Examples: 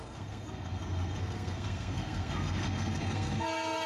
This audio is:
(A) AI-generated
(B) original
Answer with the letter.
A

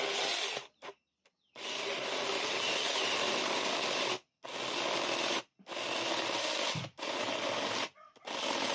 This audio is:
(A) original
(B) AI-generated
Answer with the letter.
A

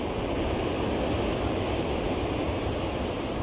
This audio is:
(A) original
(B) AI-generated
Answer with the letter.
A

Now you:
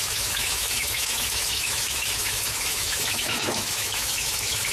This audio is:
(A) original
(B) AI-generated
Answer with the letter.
B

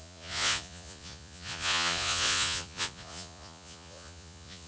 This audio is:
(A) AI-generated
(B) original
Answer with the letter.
A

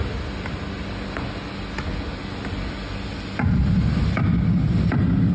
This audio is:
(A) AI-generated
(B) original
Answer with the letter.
B